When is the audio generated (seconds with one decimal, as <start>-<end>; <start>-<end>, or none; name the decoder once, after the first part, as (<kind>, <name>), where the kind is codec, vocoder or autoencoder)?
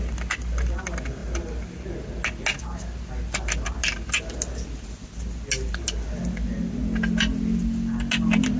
none